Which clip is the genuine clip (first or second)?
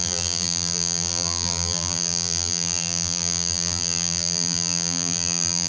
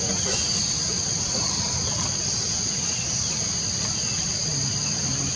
second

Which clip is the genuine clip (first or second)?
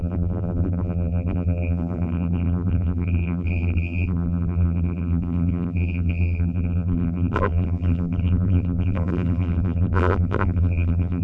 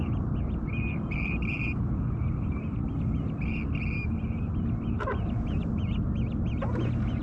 second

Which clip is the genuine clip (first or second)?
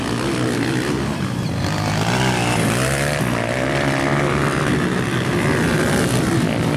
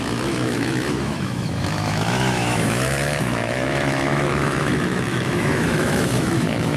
first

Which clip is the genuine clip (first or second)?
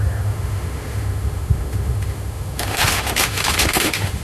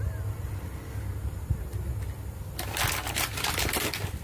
second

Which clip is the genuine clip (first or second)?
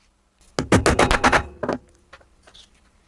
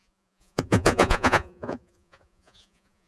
first